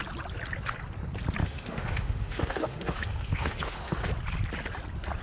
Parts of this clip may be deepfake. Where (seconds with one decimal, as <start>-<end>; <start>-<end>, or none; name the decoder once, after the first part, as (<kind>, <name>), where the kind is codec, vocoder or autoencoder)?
1.4-4.1 (autoencoder, DAC-VAE)